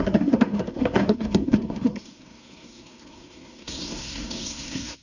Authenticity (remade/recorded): remade